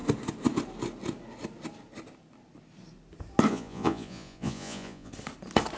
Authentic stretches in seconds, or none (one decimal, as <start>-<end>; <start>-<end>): 0.0-3.5; 5.1-5.8